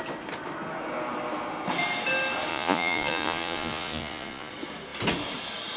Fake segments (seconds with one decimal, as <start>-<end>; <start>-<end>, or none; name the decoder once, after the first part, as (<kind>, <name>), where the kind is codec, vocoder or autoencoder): 2.5-4.5 (vocoder, Vocos)